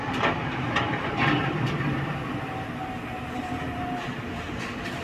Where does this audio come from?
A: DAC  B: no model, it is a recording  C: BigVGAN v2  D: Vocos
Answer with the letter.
C